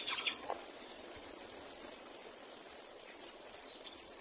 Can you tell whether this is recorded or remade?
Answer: remade